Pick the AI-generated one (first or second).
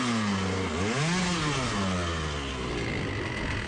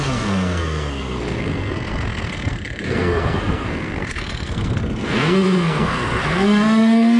second